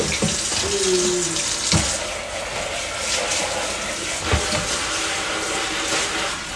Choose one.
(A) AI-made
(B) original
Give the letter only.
B